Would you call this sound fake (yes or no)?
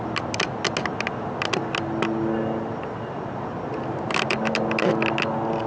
no